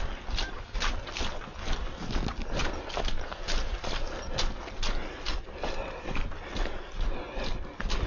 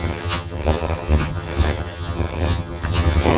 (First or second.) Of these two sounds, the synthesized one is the second